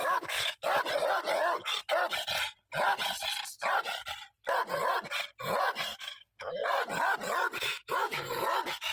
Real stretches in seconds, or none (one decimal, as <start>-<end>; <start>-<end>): 0.7-5.9; 6.6-7.6